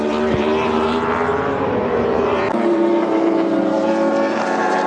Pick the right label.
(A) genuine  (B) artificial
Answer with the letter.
B